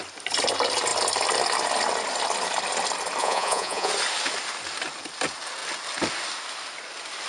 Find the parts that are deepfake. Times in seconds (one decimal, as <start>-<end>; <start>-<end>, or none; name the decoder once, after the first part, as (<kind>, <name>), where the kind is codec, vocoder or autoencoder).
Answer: 3.2-3.9 (vocoder, Vocos)